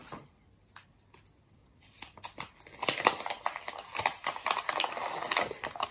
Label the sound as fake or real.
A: real